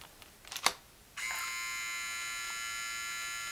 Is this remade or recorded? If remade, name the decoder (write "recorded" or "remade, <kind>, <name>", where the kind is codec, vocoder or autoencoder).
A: recorded